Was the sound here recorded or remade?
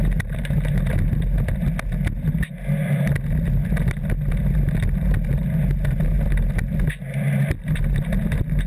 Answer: recorded